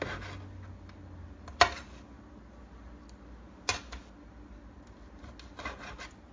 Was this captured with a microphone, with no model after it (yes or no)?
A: yes